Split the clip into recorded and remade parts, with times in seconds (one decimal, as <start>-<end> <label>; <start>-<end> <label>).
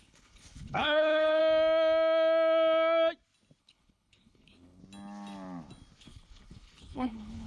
0.0-1.4 remade; 1.4-3.6 recorded; 3.6-4.8 remade; 4.8-6.0 recorded; 6.0-7.5 remade